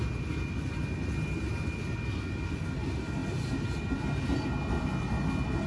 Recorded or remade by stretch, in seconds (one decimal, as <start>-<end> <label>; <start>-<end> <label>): 0.0-5.7 recorded